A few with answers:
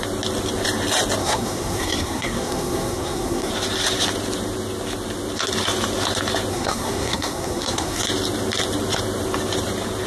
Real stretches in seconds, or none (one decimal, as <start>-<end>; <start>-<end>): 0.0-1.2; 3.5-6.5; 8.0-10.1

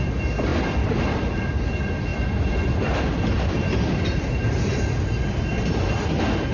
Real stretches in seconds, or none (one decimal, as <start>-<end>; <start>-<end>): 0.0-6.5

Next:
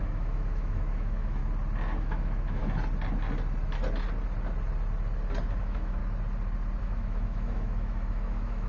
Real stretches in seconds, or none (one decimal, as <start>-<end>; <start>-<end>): 1.4-2.0; 2.6-5.6; 6.0-6.8

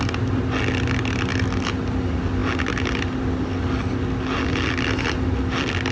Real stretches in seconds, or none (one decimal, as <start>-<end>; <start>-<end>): 0.0-5.9